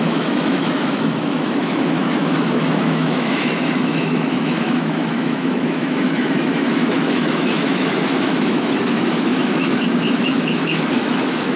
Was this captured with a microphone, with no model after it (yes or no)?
no